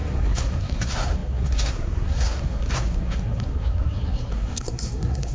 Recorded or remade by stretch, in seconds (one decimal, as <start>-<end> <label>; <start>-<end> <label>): 0.0-5.3 remade